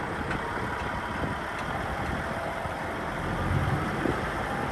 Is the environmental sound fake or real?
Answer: real